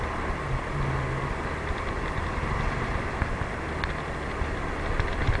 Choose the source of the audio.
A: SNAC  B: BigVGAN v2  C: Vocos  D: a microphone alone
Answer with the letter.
D